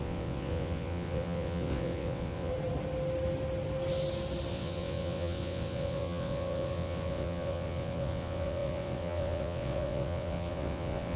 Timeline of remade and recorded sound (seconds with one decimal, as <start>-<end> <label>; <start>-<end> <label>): 0.0-2.5 remade; 2.5-4.5 recorded; 4.5-11.2 remade